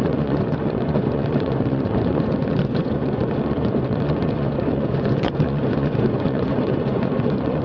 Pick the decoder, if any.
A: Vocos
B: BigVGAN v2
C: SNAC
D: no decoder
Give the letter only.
A